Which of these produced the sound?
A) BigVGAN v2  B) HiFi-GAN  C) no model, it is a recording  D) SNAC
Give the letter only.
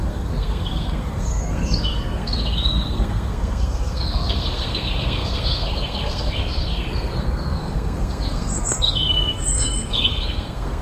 D